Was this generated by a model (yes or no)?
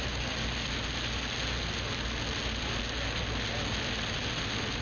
no